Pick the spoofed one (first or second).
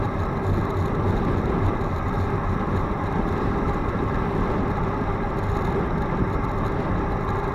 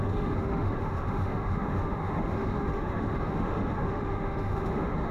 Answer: second